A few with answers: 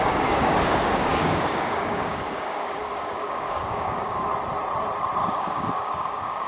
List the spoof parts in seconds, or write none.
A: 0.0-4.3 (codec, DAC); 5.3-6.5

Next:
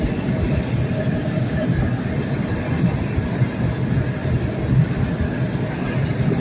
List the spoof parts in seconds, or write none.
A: none

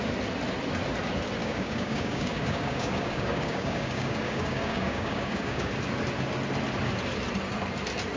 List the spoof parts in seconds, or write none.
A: 1.4-5.7 (codec, DAC)

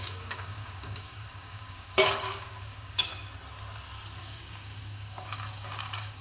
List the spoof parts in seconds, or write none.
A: 0.0-3.1 (codec, DAC); 4.2-6.2

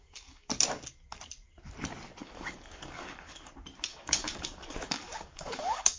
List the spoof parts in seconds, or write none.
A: 0.0-0.5 (codec, DAC); 2.2-3.5; 3.9-6.0